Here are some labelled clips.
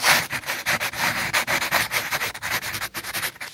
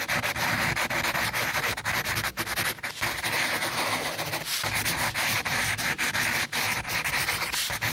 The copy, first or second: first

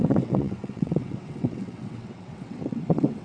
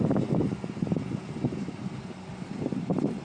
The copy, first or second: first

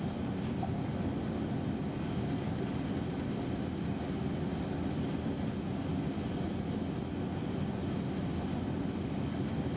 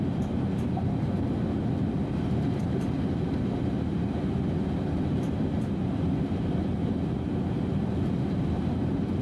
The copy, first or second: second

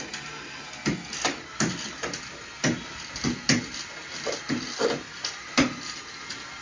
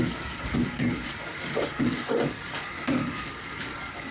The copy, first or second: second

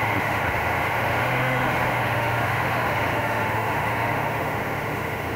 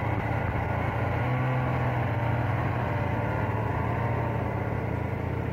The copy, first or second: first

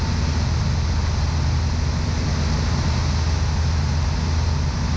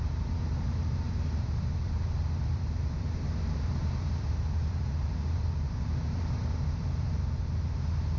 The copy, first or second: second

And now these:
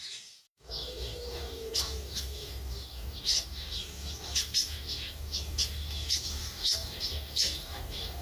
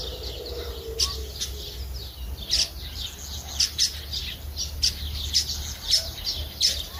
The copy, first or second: first